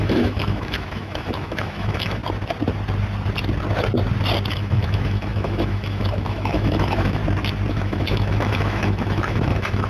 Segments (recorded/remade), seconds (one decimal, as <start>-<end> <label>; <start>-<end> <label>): 0.0-2.2 remade; 2.2-4.5 recorded; 4.5-7.2 remade; 7.2-7.7 recorded; 7.7-9.9 remade